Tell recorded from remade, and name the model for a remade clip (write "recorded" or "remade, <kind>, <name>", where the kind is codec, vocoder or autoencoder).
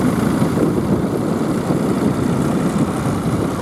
recorded